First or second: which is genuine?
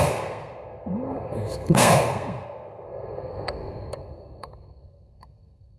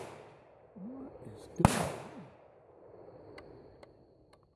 second